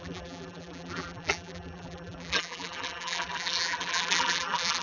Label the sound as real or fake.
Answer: fake